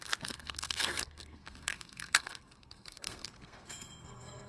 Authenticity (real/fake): fake